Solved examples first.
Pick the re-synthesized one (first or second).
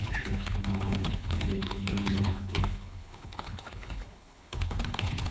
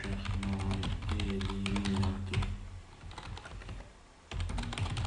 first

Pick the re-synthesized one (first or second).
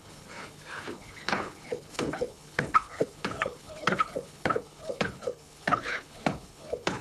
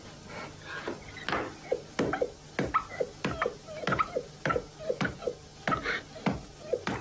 first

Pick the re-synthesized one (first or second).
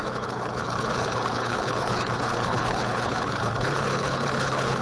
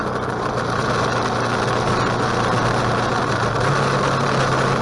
first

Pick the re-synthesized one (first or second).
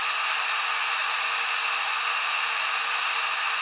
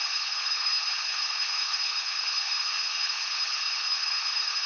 second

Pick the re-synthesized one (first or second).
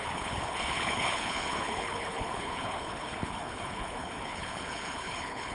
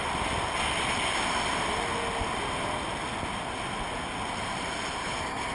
first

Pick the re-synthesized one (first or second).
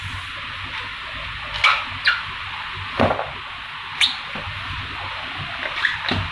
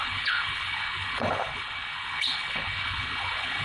second